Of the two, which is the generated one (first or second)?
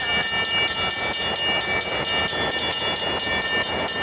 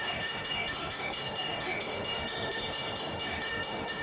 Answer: second